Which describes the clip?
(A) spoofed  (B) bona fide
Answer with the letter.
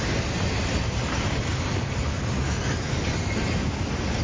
B